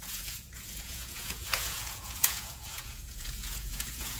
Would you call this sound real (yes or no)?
no